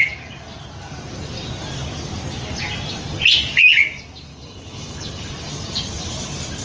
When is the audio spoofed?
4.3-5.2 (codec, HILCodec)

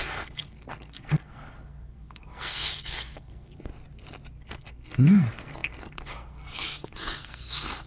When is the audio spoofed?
0.0-3.7 (codec, SNAC); 4.5-7.9

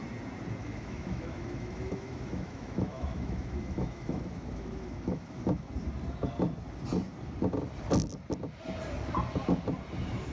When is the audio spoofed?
0.6-5.7 (autoencoder, DAC-VAE)